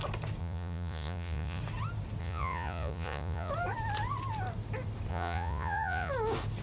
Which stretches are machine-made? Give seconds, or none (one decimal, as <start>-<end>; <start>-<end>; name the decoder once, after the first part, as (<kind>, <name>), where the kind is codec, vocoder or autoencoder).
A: 0.4-1.6 (vocoder, Vocos); 2.2-3.5; 5.1-6.1